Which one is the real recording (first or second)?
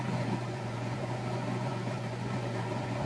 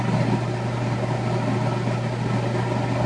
second